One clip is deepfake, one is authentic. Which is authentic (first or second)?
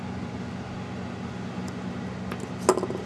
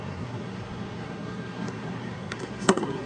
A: first